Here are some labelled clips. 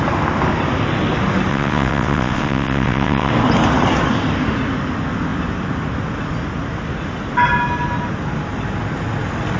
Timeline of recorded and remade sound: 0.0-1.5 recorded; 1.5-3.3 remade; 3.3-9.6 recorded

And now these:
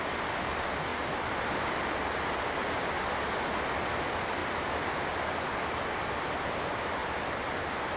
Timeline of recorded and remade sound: 0.0-8.0 recorded

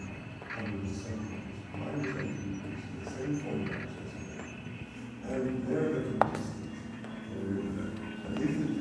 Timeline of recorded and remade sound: 0.0-8.8 recorded

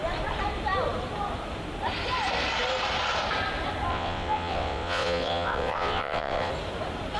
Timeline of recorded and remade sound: 0.0-3.9 recorded; 3.9-6.5 remade; 6.5-7.2 recorded

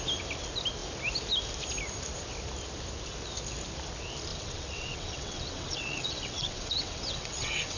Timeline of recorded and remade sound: 0.0-4.3 recorded; 4.3-7.8 remade

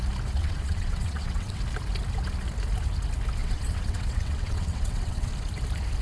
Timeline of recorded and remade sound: 0.0-0.4 recorded; 0.4-1.6 remade; 1.6-3.4 recorded; 3.4-5.3 remade; 5.3-6.0 recorded

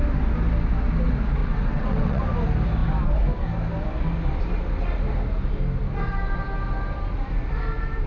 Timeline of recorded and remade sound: 0.0-1.4 recorded; 1.4-2.2 remade; 2.2-8.1 recorded